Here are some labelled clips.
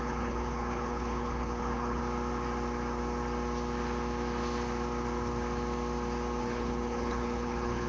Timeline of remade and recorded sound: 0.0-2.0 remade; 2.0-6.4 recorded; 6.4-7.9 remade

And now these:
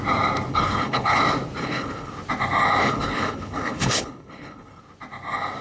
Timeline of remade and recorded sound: 0.0-0.5 recorded; 0.5-1.2 remade; 1.2-1.6 recorded; 1.6-2.1 remade; 2.1-2.8 recorded; 2.8-4.8 remade; 4.8-5.6 recorded

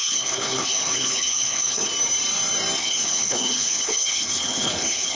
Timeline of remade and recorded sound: 0.0-1.9 remade; 1.9-2.8 recorded; 2.8-5.1 remade

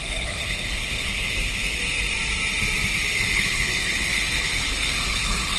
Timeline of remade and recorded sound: 0.0-1.8 remade; 1.8-3.1 recorded; 3.1-5.6 remade

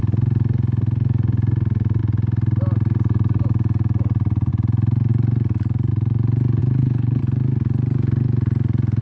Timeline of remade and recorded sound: 0.0-6.6 recorded; 6.6-7.2 remade; 7.2-9.0 recorded

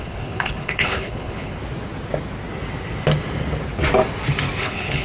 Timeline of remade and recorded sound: 0.0-1.6 remade; 1.6-4.6 recorded; 4.6-5.0 remade

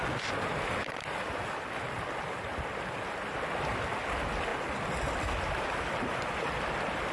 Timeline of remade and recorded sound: 0.0-7.1 recorded

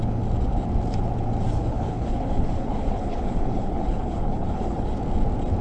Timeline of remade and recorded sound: 0.0-1.6 recorded; 1.6-4.9 remade; 4.9-5.6 recorded